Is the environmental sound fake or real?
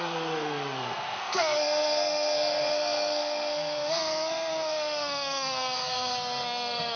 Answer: fake